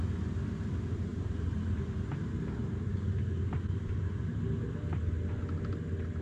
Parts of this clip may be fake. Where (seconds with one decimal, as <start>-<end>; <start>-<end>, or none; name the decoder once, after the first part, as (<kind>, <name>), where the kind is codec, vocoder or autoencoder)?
1.1-4.4 (vocoder, BigVGAN v2)